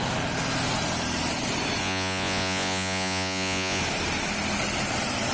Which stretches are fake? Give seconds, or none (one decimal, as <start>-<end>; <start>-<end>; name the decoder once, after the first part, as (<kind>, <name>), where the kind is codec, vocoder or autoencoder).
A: 1.8-3.8 (vocoder, Vocos)

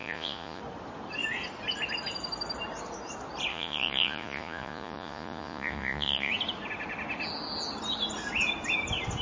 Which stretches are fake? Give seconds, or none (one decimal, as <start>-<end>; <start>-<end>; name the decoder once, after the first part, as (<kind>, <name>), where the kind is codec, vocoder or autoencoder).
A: 0.0-0.6 (vocoder, Vocos); 3.5-6.3